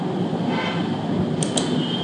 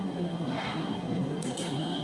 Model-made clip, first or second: second